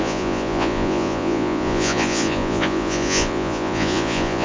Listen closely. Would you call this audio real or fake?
fake